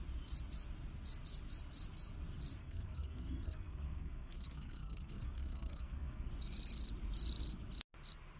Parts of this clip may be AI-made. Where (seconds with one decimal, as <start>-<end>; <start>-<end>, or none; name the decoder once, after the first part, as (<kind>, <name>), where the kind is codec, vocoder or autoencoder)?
2.6-6.3 (codec, SNAC)